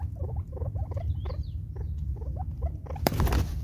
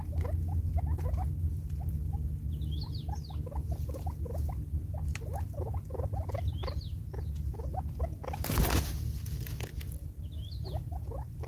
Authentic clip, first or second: second